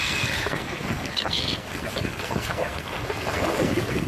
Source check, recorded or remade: remade